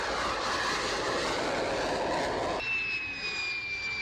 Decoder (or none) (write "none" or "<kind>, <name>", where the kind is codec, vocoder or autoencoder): none